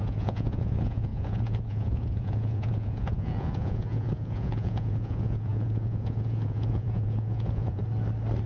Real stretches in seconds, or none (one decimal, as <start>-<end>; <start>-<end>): 7.8-8.5